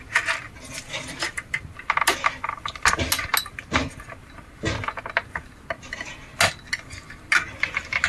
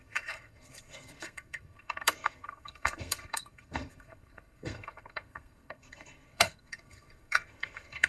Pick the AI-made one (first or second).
second